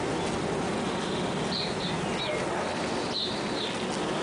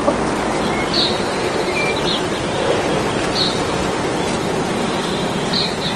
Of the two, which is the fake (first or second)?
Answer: second